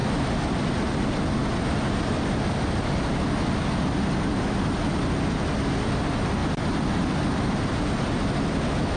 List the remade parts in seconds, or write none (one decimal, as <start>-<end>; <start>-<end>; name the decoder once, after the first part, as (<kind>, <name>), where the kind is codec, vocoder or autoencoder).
6.4-7.4 (vocoder, BigVGAN v2)